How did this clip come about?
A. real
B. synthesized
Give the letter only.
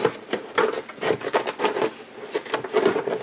A